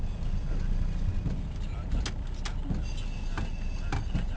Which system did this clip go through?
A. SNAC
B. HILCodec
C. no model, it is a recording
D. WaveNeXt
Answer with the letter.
C